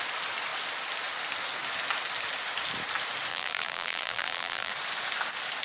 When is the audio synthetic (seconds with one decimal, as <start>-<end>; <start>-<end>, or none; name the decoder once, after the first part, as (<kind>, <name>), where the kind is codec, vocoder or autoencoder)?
3.3-4.7 (vocoder, BigVGAN v2)